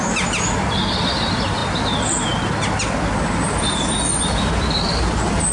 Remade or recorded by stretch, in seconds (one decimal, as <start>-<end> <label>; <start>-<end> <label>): 0.0-5.5 recorded